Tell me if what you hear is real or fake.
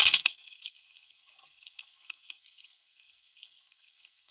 fake